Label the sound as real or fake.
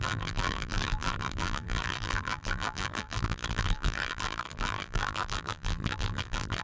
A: fake